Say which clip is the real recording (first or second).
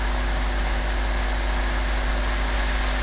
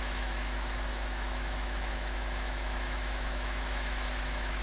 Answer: first